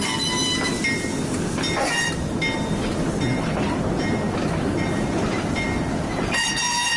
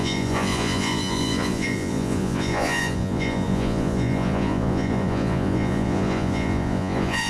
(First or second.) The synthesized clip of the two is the second